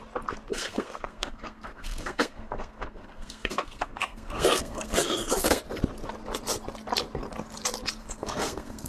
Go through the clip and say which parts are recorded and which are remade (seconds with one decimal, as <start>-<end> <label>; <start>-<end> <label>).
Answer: 0.0-0.5 recorded; 0.5-5.6 remade; 5.6-8.0 recorded; 8.0-8.9 remade